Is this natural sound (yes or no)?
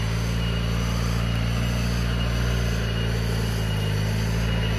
yes